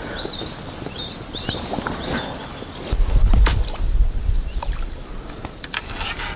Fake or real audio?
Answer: real